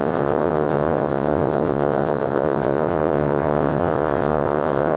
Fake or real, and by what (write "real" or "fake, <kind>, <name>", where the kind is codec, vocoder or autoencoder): fake, vocoder, WaveNeXt